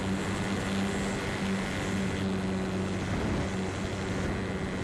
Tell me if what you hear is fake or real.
real